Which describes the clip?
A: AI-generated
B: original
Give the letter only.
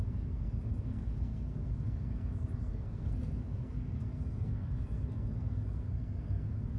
A